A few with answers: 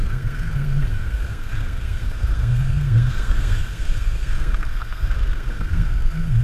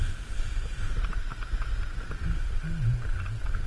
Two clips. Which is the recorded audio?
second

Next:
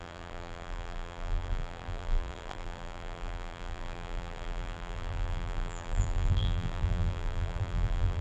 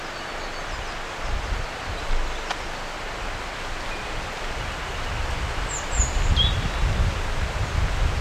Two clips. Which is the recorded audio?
second